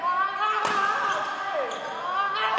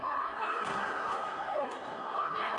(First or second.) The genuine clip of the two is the first